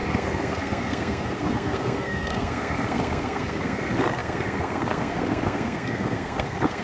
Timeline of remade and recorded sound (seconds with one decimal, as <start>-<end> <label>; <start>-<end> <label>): 0.0-6.8 remade